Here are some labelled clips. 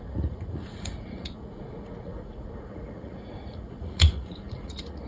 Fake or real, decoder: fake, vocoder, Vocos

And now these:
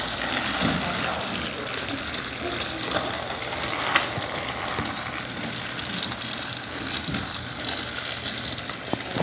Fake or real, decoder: real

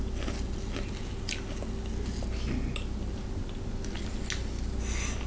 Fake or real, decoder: real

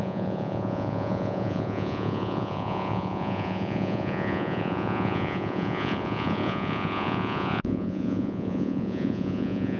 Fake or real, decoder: fake, vocoder, Vocos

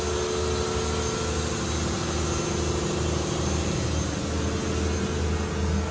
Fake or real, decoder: real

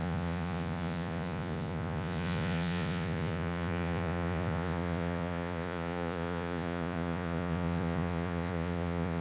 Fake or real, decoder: fake, vocoder, Vocos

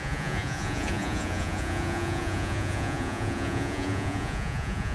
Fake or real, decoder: fake, vocoder, Vocos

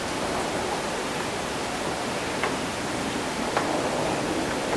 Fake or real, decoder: real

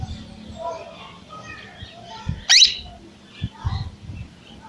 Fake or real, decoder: real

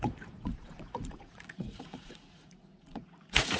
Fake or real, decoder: fake, vocoder, Vocos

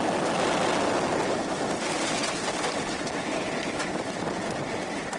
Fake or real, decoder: real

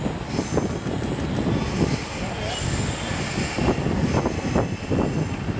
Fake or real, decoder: real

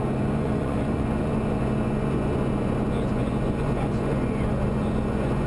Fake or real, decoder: fake, vocoder, Vocos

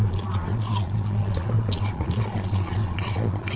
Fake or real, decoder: fake, vocoder, Vocos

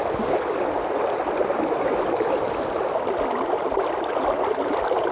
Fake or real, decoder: real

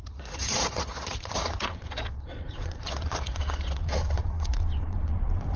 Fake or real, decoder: fake, vocoder, Vocos